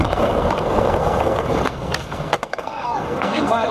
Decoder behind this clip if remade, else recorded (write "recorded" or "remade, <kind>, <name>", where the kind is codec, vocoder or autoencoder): remade, codec, SNAC